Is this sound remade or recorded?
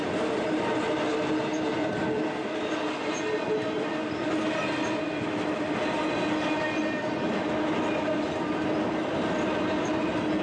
recorded